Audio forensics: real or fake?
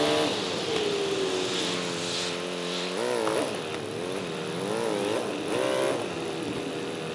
real